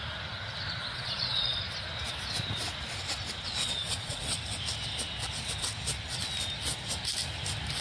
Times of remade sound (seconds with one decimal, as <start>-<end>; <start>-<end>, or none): 0.8-1.6; 3.6-4.3